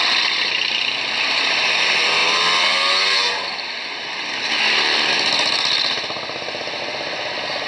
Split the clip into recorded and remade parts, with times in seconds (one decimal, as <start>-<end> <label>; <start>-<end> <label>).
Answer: 0.0-7.7 recorded